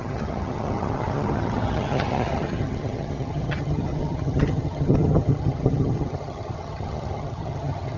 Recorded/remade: remade